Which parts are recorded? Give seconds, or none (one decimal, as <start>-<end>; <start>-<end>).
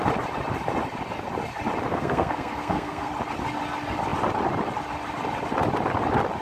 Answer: 0.0-1.9; 3.1-6.4